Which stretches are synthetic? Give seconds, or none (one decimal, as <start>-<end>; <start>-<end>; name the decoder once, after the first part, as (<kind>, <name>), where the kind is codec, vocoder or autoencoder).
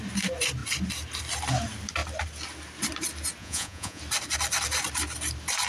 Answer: 3.4-4.0 (vocoder, Vocos)